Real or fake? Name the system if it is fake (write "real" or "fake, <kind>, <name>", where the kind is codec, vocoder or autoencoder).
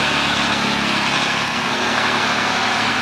fake, codec, SNAC